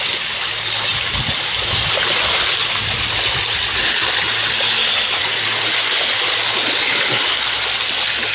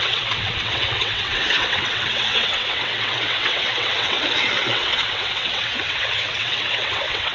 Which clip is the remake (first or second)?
second